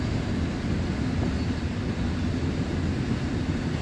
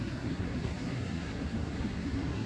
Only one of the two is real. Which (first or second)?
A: first